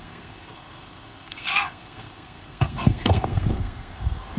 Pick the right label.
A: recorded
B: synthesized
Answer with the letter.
B